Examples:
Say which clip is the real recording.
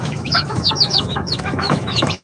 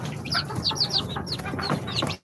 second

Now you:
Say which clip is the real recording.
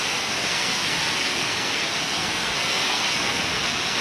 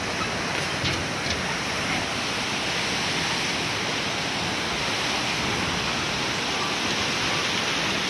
second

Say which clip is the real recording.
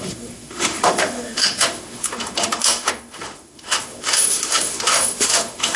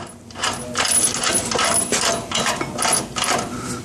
second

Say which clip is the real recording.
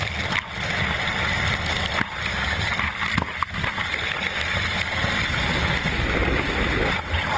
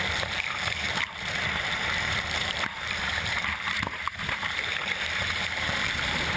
first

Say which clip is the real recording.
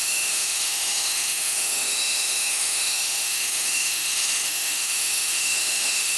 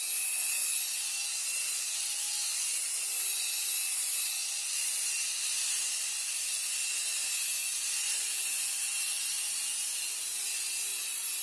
second